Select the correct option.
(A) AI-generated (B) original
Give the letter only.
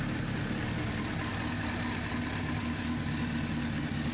B